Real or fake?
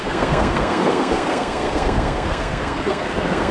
fake